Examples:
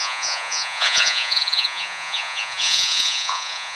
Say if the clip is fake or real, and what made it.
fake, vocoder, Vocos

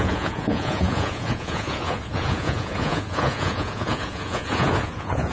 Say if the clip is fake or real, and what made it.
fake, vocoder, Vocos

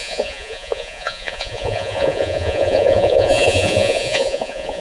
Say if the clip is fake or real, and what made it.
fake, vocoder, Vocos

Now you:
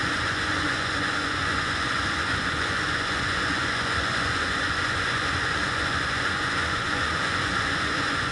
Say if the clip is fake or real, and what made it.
fake, vocoder, Vocos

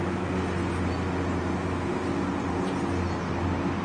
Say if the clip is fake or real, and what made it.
real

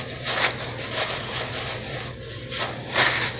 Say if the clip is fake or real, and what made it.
real